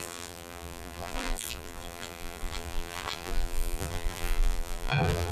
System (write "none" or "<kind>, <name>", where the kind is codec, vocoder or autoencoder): vocoder, BigVGAN v2